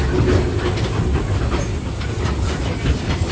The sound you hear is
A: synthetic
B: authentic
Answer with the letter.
B